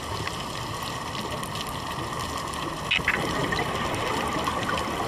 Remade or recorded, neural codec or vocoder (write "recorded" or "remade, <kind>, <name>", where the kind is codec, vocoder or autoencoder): recorded